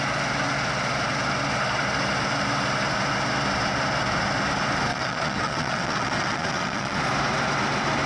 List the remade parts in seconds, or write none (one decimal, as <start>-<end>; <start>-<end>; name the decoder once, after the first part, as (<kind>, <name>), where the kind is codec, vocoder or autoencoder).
4.9-7.0 (vocoder, Vocos)